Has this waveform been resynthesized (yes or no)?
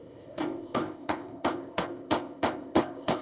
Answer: yes